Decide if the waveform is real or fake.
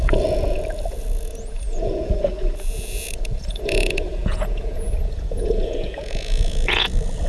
fake